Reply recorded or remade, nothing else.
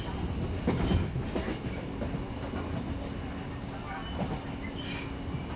recorded